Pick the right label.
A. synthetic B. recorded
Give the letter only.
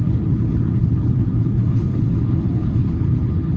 A